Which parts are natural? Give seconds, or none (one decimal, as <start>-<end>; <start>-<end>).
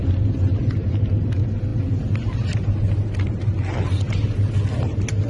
0.0-5.3